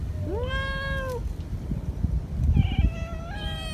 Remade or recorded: recorded